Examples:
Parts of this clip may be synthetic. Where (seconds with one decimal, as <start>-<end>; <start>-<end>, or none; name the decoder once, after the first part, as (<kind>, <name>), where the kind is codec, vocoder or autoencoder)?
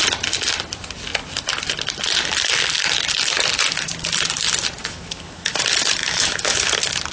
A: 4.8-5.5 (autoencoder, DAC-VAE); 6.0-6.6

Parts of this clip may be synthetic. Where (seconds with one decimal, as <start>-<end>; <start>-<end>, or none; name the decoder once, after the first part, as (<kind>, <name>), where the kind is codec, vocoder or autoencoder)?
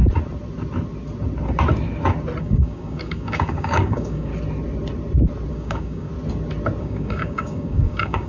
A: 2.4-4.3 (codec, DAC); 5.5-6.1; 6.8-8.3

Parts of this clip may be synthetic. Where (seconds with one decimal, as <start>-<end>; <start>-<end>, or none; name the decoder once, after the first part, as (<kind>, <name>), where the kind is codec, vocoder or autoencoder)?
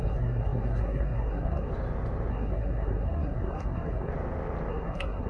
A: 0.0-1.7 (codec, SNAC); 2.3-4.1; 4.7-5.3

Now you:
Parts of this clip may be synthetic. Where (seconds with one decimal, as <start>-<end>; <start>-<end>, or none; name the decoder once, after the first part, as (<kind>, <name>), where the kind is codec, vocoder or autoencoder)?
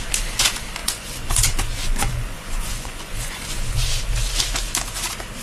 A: 0.8-4.0 (vocoder, Vocos)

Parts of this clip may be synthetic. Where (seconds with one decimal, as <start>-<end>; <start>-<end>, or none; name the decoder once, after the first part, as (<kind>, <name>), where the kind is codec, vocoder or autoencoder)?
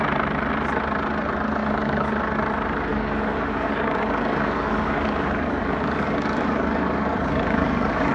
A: 1.6-2.1 (codec, DAC); 2.9-8.1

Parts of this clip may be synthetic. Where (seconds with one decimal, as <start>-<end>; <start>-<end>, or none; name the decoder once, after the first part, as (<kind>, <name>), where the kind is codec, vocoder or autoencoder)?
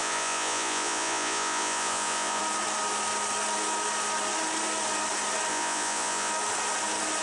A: 0.0-2.4 (vocoder, Vocos); 5.5-6.3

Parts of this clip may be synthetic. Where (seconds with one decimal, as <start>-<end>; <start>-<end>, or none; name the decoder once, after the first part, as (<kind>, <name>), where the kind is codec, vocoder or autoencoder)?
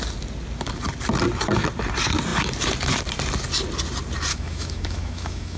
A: 4.3-5.6 (autoencoder, DAC-VAE)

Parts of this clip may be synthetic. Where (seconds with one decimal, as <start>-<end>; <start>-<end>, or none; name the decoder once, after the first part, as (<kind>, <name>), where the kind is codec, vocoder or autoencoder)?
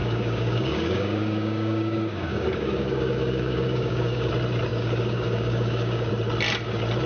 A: 0.0-4.3 (codec, DAC); 4.7-6.1